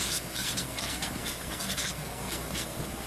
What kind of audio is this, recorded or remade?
remade